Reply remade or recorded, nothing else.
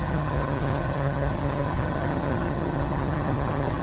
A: remade